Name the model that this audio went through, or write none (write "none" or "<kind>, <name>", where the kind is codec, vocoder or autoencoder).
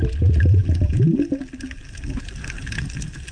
none